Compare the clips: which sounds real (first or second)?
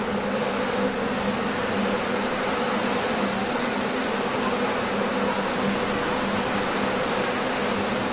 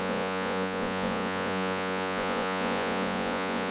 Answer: first